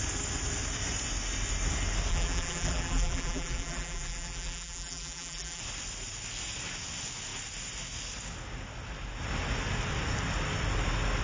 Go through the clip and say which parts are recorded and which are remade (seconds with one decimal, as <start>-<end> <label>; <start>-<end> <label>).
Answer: 0.0-2.1 recorded; 2.1-5.6 remade; 5.6-11.2 recorded